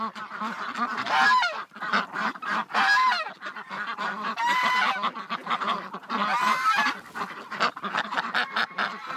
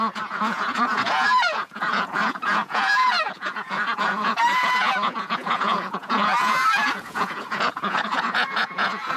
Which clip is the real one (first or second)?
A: first